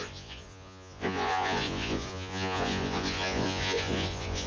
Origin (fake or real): fake